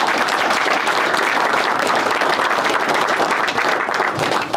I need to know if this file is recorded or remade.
remade